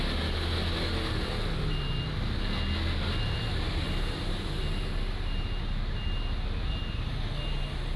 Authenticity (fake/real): real